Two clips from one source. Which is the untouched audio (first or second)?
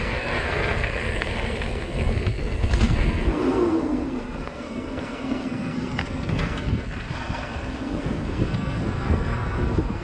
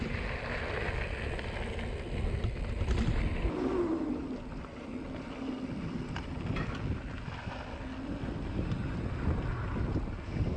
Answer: second